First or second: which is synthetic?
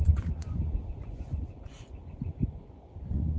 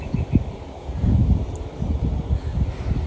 first